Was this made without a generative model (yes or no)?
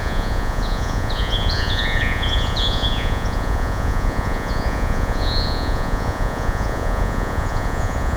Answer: no